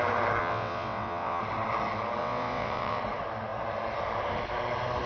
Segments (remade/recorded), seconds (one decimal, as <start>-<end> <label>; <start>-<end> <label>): 0.0-0.4 recorded; 0.4-1.4 remade; 1.4-2.2 recorded; 2.2-3.0 remade; 3.0-5.1 recorded